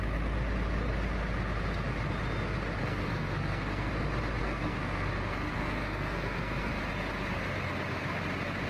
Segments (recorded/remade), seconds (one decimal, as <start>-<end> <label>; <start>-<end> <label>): 0.0-2.8 recorded; 2.8-3.9 remade; 3.9-4.4 recorded; 4.4-6.7 remade; 6.7-8.7 recorded

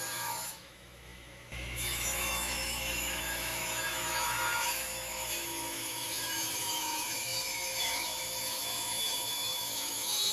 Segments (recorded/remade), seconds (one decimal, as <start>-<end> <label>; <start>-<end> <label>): 0.0-10.3 remade

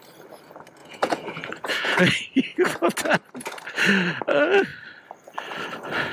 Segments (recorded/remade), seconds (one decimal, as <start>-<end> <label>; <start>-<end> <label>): 0.0-0.8 recorded; 0.8-2.0 remade; 2.0-6.1 recorded

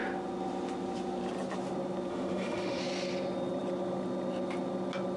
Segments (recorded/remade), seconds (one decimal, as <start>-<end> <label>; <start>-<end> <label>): 0.0-2.1 recorded; 2.1-2.8 remade; 2.8-5.2 recorded